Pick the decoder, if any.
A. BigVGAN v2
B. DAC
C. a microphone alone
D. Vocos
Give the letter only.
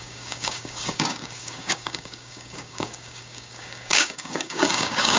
B